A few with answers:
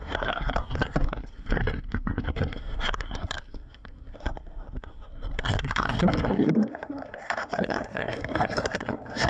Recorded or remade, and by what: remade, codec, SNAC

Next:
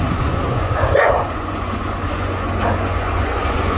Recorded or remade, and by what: remade, vocoder, Vocos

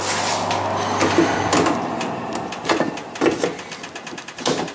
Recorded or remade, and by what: recorded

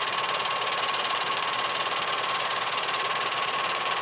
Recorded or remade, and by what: remade, vocoder, Vocos